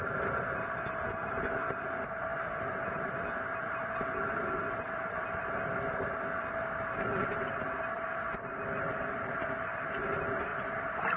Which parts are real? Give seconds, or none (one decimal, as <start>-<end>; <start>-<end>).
0.0-2.3; 3.0-10.5